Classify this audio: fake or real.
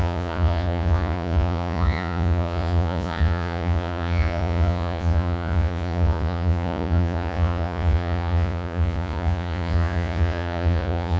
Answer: fake